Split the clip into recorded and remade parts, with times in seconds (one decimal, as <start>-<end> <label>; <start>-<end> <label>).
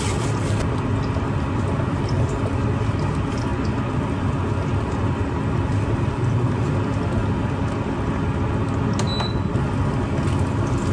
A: 0.0-7.2 remade; 7.2-9.5 recorded; 9.5-10.9 remade